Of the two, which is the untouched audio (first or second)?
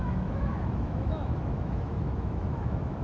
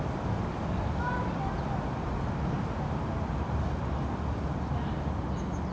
second